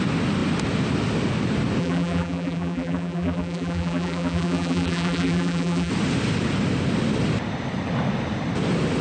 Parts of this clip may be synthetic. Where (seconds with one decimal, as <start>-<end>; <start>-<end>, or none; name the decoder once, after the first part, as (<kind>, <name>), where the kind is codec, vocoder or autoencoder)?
1.8-5.9 (vocoder, BigVGAN v2)